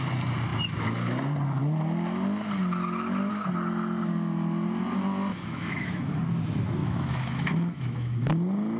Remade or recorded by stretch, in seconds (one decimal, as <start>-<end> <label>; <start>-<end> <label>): 0.0-5.3 recorded; 5.3-6.2 remade; 6.2-6.8 recorded; 6.8-8.3 remade; 8.3-8.8 recorded